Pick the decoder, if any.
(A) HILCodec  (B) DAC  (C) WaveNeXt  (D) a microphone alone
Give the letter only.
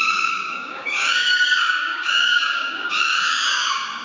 B